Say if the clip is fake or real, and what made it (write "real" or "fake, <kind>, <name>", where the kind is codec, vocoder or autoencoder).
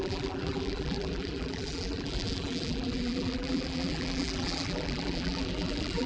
fake, vocoder, BigVGAN v2